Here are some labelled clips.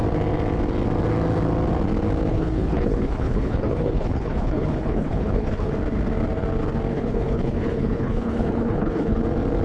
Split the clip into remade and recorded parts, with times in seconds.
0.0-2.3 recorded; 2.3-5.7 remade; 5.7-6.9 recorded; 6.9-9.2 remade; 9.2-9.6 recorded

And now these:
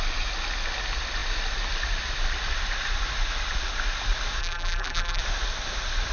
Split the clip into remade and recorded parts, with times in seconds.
0.0-4.4 recorded; 4.4-5.2 remade; 5.2-6.1 recorded

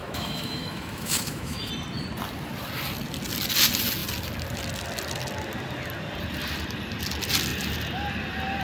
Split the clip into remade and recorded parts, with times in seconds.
0.0-1.7 remade; 1.7-8.6 recorded